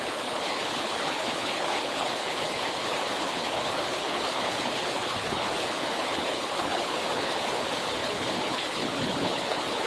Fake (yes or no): yes